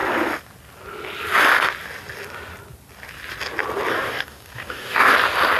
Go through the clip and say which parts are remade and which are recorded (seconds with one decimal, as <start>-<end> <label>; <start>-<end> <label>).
0.0-3.9 recorded; 3.9-5.1 remade; 5.1-5.6 recorded